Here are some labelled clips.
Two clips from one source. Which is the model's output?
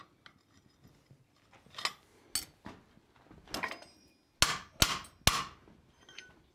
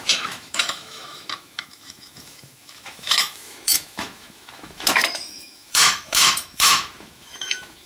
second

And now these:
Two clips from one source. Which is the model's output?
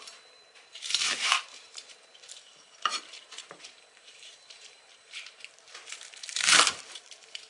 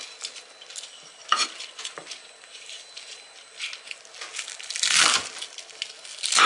first